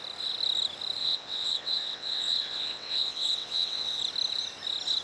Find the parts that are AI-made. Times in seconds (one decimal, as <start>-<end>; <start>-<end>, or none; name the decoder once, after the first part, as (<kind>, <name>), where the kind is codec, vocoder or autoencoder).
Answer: 1.0-4.0 (vocoder, WaveNeXt)